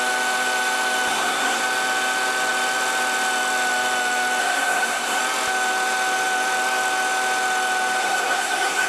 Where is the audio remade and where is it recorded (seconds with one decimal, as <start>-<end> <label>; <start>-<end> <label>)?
0.0-1.1 recorded; 1.1-1.6 remade; 1.6-4.4 recorded; 4.4-5.2 remade; 5.2-8.0 recorded; 8.0-8.9 remade

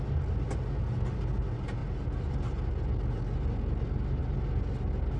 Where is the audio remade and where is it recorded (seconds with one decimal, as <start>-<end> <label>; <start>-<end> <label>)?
0.0-5.2 recorded